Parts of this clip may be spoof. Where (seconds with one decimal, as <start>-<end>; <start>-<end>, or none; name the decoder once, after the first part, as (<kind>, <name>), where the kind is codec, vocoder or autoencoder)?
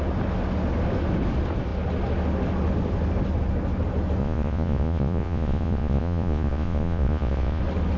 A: 4.2-7.6 (vocoder, Vocos)